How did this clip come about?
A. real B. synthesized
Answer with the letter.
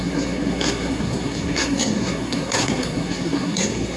B